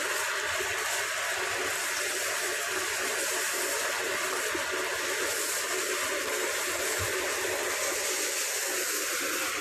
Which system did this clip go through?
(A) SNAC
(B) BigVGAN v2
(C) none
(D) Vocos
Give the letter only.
C